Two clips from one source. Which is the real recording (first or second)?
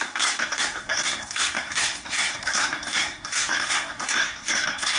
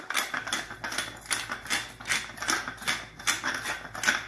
second